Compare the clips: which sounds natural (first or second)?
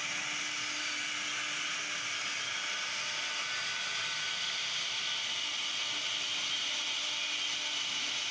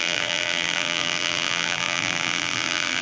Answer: first